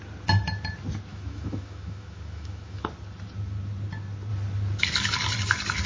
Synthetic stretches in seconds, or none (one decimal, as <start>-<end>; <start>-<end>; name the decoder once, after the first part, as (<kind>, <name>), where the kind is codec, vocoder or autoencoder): 1.1-2.8 (autoencoder, DAC-VAE)